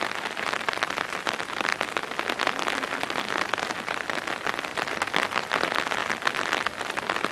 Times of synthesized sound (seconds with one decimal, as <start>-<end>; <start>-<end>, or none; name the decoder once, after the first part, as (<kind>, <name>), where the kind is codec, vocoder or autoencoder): none